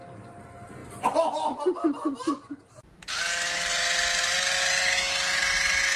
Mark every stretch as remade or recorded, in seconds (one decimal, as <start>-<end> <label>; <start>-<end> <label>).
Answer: 0.0-6.0 recorded